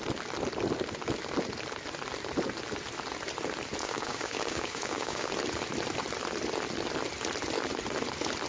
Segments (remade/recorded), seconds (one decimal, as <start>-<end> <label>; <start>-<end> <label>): 0.0-3.8 recorded; 3.8-5.3 remade; 5.3-8.5 recorded